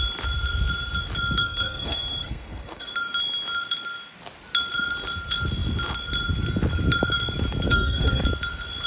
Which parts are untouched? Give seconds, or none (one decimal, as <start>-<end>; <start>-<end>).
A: 0.0-1.4; 2.9-7.7; 8.2-8.9